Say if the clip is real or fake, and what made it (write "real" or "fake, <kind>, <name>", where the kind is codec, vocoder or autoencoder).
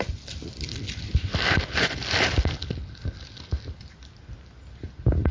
real